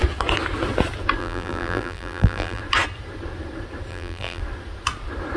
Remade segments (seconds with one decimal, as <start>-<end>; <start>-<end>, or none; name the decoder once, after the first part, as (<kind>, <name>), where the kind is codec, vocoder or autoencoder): 1.2-2.6 (vocoder, BigVGAN v2); 3.9-4.4